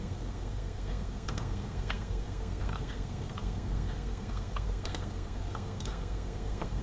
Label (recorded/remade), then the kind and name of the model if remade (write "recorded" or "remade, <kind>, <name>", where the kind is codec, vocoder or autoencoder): remade, codec, SNAC